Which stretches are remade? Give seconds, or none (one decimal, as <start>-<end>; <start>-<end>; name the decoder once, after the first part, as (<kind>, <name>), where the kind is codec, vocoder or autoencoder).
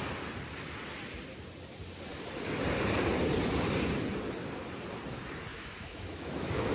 5.5-6.7 (autoencoder, DAC-VAE)